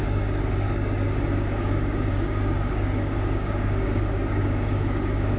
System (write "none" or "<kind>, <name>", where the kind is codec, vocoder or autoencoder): codec, DAC